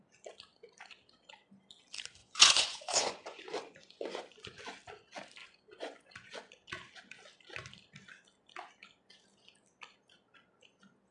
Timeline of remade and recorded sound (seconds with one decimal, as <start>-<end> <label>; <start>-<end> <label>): 0.0-2.2 recorded; 2.2-4.6 remade; 4.6-5.4 recorded; 5.4-6.3 remade; 6.3-11.1 recorded